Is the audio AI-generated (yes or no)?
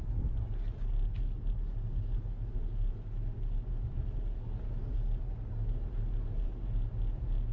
no